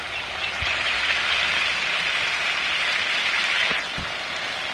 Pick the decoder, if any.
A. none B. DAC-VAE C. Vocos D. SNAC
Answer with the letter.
A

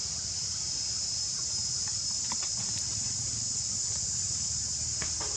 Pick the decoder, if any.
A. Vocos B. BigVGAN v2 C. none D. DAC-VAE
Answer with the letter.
C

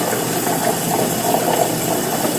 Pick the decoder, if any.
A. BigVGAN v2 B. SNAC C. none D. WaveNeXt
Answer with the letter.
A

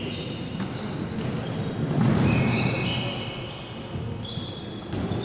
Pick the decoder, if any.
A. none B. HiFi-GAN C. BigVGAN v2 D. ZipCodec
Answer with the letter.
A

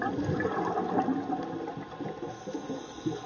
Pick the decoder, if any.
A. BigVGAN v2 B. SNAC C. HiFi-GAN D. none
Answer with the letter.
D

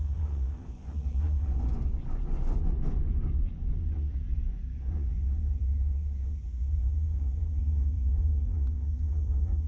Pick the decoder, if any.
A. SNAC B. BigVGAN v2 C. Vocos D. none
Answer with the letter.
C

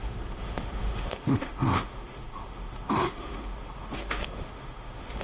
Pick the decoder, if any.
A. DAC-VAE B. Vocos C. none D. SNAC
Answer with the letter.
A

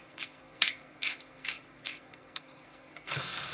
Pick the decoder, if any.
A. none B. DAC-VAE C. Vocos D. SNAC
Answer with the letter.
D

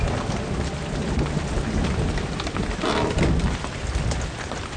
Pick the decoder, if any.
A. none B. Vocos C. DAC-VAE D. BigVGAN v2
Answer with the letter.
A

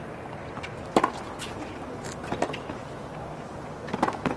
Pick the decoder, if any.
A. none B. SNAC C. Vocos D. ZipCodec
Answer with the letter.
A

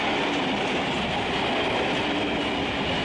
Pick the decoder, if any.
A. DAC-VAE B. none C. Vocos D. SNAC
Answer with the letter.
B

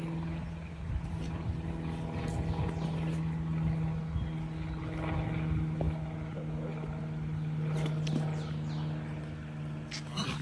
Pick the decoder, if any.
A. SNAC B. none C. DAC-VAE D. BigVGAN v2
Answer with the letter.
B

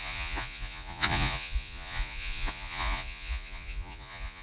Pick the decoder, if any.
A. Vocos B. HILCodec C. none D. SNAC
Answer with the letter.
A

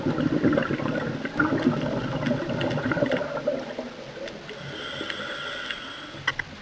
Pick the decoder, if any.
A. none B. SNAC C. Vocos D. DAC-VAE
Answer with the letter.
A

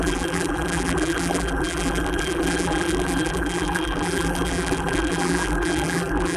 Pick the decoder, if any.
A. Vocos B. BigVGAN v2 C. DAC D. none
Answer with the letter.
B